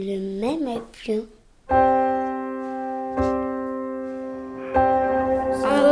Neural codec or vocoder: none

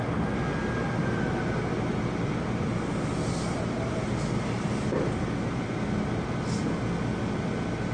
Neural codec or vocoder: none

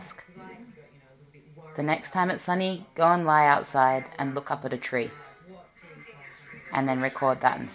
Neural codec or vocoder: none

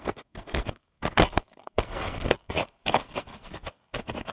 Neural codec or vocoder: codec, SNAC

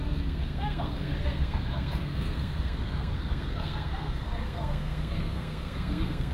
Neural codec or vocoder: codec, SNAC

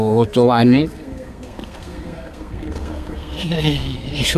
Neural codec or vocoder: codec, SNAC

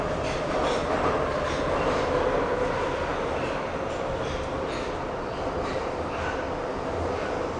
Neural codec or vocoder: none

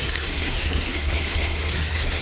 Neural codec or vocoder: codec, SNAC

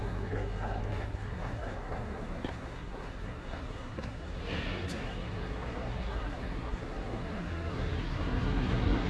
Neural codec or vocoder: codec, SNAC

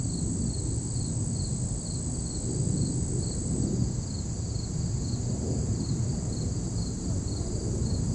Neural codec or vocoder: none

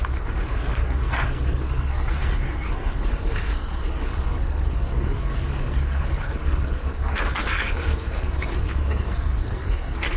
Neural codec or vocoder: codec, SNAC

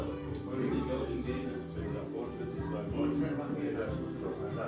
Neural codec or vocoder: none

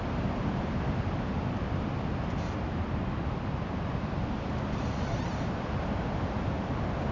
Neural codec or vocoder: none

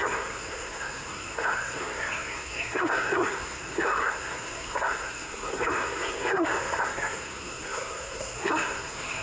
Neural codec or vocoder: codec, SNAC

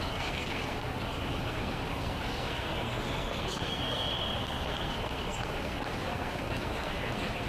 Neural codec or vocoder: codec, SNAC